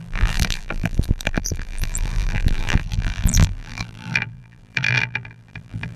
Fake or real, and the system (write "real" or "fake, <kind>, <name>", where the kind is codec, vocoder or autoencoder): fake, vocoder, BigVGAN v2